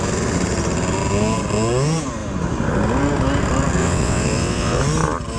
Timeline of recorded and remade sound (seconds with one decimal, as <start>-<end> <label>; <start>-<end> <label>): 0.0-3.8 recorded; 3.8-4.8 remade; 4.8-5.4 recorded